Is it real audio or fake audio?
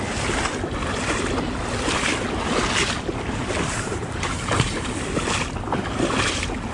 real